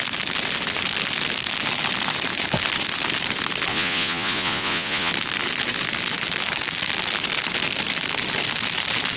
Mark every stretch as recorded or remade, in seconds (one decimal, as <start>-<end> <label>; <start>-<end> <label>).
0.0-3.7 recorded; 3.7-5.1 remade; 5.1-9.2 recorded